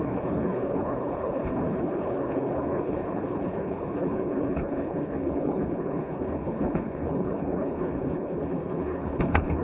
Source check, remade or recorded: remade